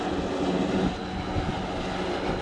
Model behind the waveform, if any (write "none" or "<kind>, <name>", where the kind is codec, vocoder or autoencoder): none